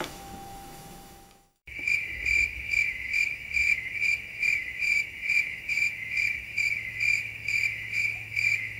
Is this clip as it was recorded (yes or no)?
no